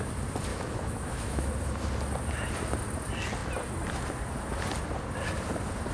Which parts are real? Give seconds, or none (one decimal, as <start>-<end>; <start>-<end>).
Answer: 0.0-0.5; 1.5-5.9

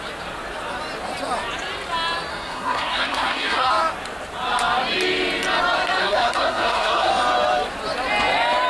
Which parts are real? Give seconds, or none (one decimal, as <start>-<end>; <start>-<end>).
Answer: 0.0-2.3; 3.7-6.0; 7.1-8.7